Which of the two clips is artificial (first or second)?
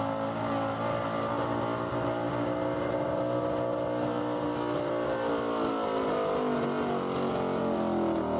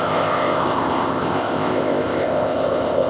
second